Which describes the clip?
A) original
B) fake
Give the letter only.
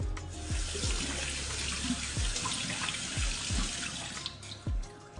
A